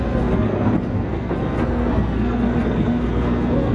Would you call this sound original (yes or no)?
no